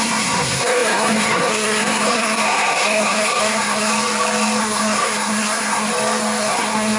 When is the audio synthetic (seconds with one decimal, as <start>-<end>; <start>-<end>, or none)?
0.0-3.9; 4.6-5.9; 6.4-7.0

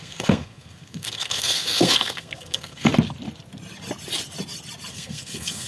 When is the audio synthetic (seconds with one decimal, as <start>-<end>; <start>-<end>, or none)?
0.0-2.9; 4.9-5.7